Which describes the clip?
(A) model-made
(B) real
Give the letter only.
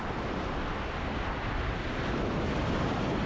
B